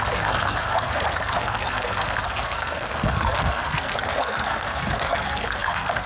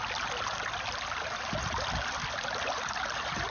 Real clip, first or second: second